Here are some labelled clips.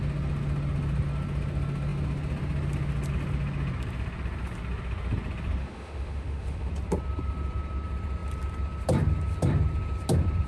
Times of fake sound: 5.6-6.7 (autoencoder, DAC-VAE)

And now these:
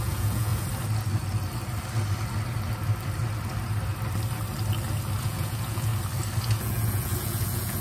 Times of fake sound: 0.0-0.5 (vocoder, Vocos); 5.2-5.9; 6.4-7.8

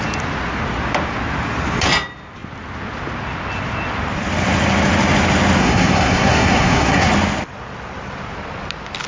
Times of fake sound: 5.6-7.1 (codec, SNAC)

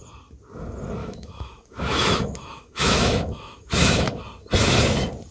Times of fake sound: 1.0-4.2 (autoencoder, DAC-VAE)

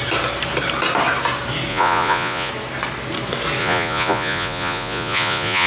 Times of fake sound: 1.7-2.5 (vocoder, Vocos); 3.6-5.7

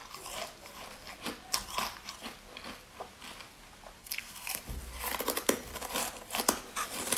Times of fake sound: 4.0-4.6 (codec, SNAC)

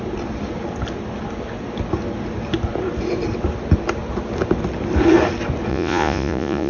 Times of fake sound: 5.7-6.7 (vocoder, Vocos)

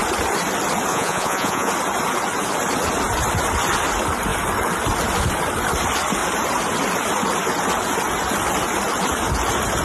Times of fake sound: 0.9-1.7 (vocoder, Vocos)